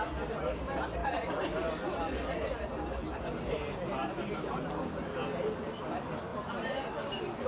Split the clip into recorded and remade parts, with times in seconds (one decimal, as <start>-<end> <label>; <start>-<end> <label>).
0.0-7.5 recorded